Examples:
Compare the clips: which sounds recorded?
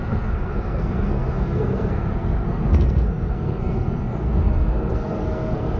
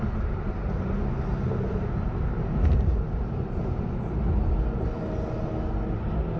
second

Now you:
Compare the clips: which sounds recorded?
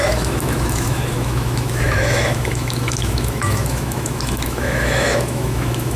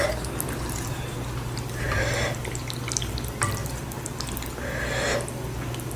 second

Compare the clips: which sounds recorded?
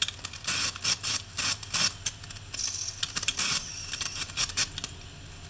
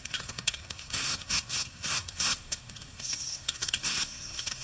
first